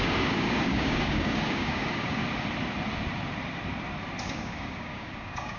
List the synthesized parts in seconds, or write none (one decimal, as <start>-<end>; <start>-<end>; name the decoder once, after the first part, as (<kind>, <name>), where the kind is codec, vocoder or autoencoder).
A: 0.0-2.2 (codec, DAC); 4.2-5.6